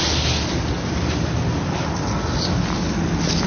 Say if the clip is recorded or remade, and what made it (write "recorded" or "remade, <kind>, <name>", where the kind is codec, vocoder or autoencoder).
recorded